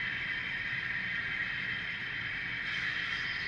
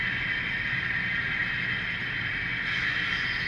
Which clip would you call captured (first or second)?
second